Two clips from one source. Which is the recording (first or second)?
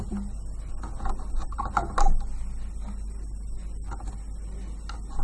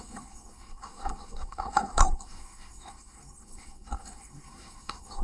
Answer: first